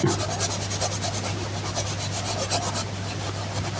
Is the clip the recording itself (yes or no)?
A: yes